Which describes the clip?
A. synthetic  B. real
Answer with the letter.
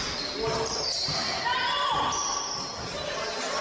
B